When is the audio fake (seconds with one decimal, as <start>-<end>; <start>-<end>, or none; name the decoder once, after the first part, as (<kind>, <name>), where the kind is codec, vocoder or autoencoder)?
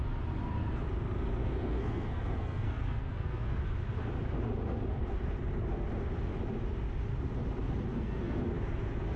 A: 1.4-3.6 (codec, SNAC); 7.9-8.4